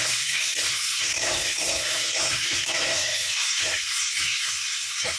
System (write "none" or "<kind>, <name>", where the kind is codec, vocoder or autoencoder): codec, SNAC